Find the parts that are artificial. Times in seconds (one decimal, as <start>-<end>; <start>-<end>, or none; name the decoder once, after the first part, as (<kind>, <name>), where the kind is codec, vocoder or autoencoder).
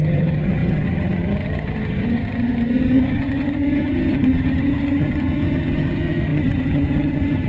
0.0-7.5 (vocoder, HiFi-GAN)